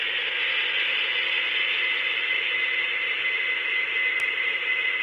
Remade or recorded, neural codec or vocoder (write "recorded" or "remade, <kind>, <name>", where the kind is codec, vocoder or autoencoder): recorded